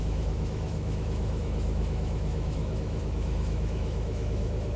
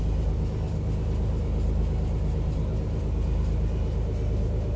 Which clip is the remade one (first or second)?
first